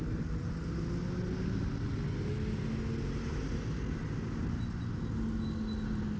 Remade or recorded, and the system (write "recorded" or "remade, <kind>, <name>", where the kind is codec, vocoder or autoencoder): recorded